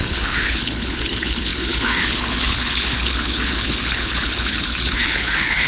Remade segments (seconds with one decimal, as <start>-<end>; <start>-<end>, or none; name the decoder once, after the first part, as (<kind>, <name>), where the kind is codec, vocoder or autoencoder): 0.0-5.7 (codec, HILCodec)